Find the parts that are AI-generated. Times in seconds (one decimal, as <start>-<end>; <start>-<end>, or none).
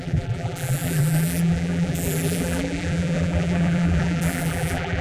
0.0-5.0